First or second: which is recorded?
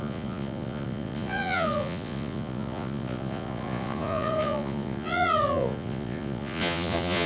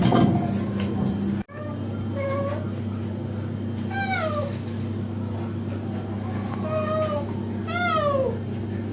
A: second